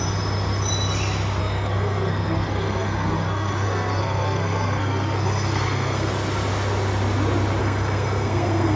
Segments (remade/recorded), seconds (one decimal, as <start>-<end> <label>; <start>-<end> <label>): 0.0-1.4 recorded; 1.4-6.1 remade; 6.1-7.6 recorded; 7.6-8.8 remade